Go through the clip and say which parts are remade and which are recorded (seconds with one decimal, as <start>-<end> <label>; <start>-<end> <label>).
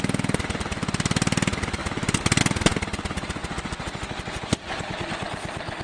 0.0-5.8 recorded